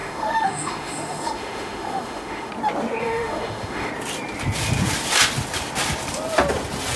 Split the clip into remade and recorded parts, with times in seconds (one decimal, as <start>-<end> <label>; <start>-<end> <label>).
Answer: 0.0-2.5 remade; 2.5-3.0 recorded; 3.0-3.9 remade; 3.9-7.0 recorded